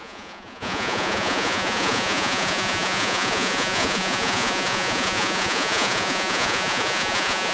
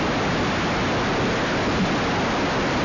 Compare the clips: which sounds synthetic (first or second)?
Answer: first